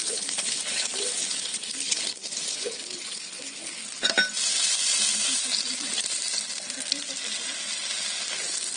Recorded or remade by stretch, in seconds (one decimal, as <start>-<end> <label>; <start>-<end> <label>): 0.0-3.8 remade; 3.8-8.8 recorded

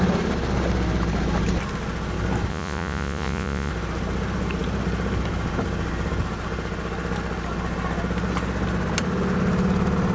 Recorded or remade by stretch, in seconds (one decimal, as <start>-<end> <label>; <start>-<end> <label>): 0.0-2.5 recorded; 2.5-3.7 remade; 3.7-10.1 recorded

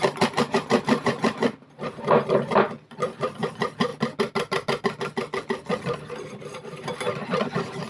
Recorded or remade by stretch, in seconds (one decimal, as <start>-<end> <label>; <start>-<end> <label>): 0.0-3.9 remade; 3.9-5.8 recorded; 5.8-7.9 remade

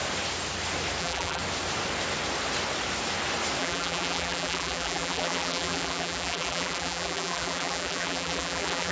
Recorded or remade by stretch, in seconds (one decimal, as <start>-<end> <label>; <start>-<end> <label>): 0.0-1.0 recorded; 1.0-1.4 remade; 1.4-3.6 recorded; 3.6-8.9 remade